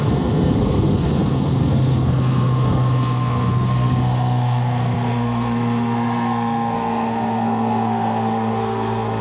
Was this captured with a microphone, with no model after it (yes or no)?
no